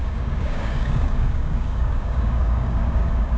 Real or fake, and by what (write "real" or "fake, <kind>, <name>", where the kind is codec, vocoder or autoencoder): fake, codec, DAC